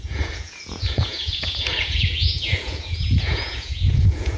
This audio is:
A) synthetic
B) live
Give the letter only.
A